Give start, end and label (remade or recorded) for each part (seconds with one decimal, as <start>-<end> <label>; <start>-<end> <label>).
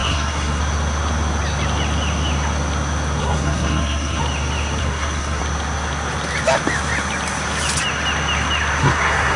0.0-0.6 remade; 0.6-3.2 recorded; 3.2-4.2 remade; 4.2-4.8 recorded; 4.8-5.4 remade; 5.4-8.8 recorded; 8.8-9.4 remade